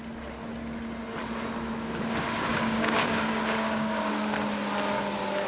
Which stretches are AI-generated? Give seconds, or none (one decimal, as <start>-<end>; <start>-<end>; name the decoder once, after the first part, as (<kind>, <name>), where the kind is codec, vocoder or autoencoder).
2.5-4.1 (codec, DAC)